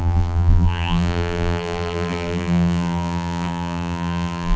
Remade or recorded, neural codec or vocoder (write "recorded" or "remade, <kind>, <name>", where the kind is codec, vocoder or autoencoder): remade, vocoder, BigVGAN v2